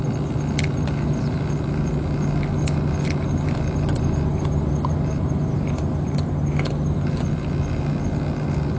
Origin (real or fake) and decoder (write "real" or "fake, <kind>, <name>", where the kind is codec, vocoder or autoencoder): real